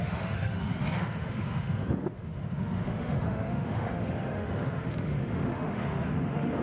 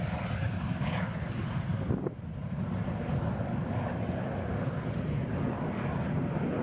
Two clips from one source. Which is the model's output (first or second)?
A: first